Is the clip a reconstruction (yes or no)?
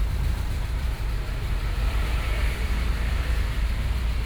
yes